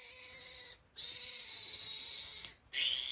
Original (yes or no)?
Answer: yes